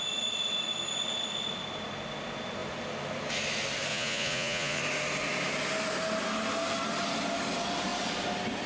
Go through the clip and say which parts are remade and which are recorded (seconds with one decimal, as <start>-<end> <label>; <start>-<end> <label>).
0.0-3.9 recorded; 3.9-4.8 remade; 4.8-8.7 recorded